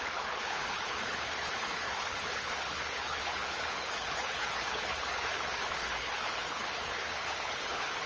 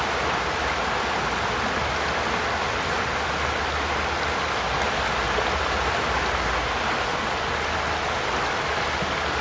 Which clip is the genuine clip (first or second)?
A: second